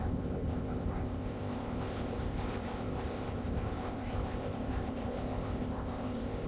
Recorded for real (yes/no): no